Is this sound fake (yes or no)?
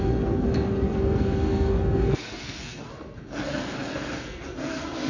yes